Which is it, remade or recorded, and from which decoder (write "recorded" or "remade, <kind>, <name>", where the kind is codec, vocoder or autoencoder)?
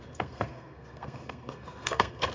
remade, codec, SNAC